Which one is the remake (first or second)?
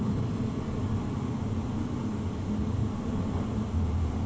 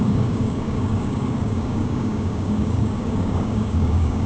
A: second